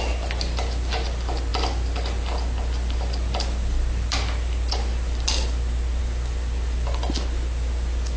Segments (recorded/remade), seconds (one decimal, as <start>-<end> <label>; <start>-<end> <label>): 0.0-8.2 recorded